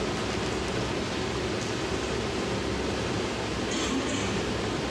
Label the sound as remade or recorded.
recorded